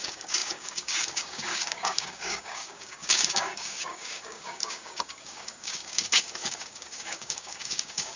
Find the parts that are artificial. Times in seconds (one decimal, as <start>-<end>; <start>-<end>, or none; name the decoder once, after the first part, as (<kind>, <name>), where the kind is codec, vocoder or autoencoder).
0.0-8.2 (codec, DAC)